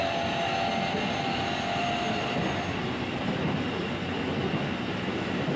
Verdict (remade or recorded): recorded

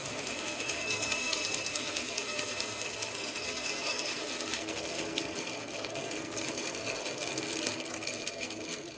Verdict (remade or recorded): remade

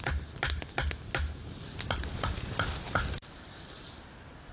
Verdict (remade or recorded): recorded